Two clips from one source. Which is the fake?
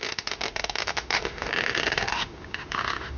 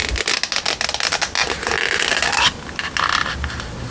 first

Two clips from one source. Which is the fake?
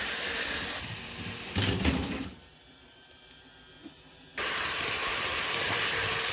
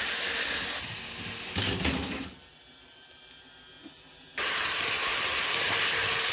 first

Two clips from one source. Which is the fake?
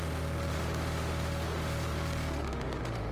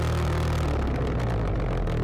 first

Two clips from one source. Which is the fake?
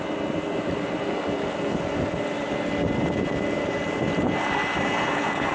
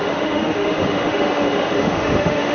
second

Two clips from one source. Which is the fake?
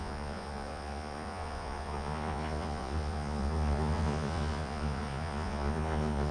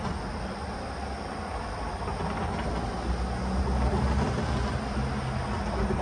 first